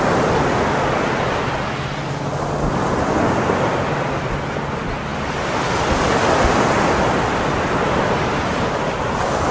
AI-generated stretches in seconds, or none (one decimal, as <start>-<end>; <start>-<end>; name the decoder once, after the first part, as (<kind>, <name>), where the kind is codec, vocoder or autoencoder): none

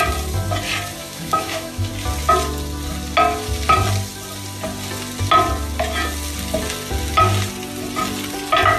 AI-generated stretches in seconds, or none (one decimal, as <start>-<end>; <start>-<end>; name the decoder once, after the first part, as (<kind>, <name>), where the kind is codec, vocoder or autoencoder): 1.0-1.9 (autoencoder, DAC-VAE)

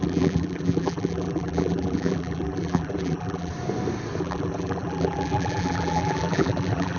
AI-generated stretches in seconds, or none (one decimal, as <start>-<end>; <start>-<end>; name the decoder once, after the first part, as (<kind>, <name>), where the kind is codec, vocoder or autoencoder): 0.0-3.5 (vocoder, BigVGAN v2); 4.2-7.0

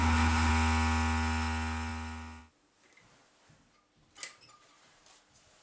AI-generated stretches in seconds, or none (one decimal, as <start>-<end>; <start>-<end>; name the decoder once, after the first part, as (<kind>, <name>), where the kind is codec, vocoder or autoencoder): 0.0-0.5 (codec, HILCodec)

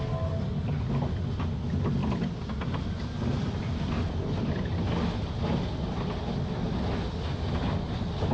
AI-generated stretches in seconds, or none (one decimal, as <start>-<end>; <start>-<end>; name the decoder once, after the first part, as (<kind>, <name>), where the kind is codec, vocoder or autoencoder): none